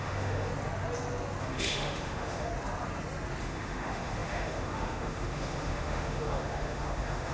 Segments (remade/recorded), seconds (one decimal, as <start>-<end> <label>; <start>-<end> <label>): 0.0-0.5 remade; 0.5-1.4 recorded; 1.4-2.5 remade; 2.5-3.4 recorded; 3.4-7.3 remade